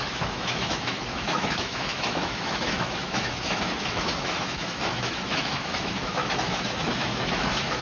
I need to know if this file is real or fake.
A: fake